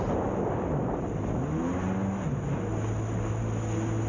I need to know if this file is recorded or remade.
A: recorded